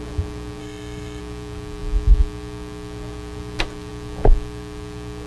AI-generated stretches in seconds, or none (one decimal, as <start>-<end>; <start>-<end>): 0.6-1.2